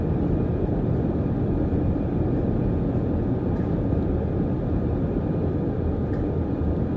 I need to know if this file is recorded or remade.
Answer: recorded